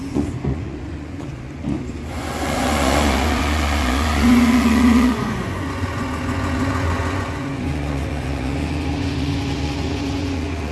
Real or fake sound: fake